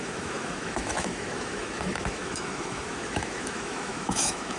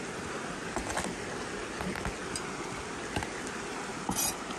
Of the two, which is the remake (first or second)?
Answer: first